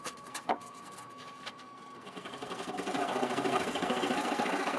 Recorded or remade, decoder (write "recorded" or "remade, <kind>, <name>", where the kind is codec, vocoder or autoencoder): remade, codec, SNAC